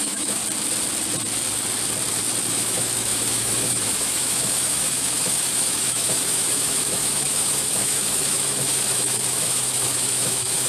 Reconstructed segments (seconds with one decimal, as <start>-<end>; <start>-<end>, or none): 0.0-0.4; 2.5-10.7